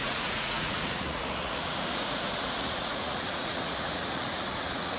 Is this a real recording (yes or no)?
no